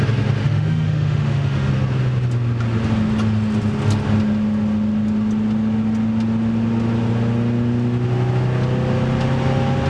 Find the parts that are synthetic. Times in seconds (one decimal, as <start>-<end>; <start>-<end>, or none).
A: 0.4-1.7